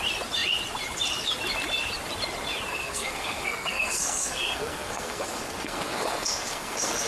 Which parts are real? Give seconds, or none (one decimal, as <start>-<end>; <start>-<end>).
0.0-2.7